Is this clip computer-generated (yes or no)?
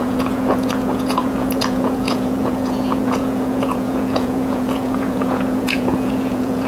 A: yes